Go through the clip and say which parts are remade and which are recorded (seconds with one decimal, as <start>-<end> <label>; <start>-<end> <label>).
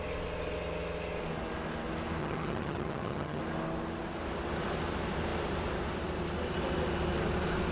0.0-2.2 recorded; 2.2-3.4 remade; 3.4-7.7 recorded